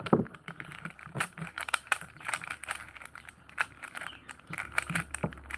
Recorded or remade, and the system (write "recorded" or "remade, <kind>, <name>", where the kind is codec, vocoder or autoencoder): remade, vocoder, BigVGAN v2